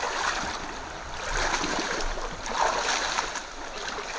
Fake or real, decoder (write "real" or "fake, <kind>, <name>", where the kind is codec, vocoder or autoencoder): real